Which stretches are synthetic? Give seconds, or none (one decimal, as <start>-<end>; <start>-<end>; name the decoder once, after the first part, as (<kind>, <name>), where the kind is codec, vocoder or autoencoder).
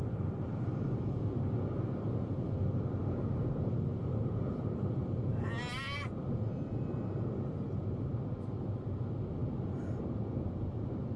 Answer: none